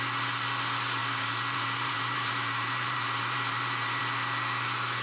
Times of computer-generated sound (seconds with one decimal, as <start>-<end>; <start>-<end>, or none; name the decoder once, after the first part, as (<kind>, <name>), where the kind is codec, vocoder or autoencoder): 1.0-4.0 (vocoder, BigVGAN v2)